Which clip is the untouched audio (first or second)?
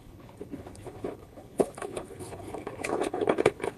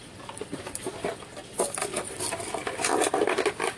second